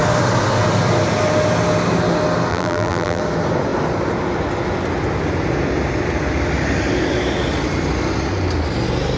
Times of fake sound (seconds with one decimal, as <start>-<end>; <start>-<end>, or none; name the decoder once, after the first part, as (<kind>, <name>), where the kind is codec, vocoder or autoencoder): 2.5-3.2 (vocoder, BigVGAN v2)